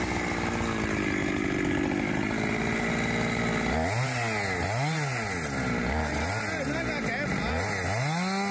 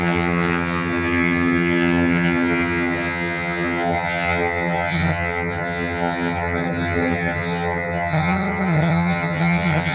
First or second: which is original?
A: first